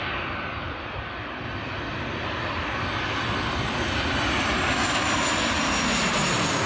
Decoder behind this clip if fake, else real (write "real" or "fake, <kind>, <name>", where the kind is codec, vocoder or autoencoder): real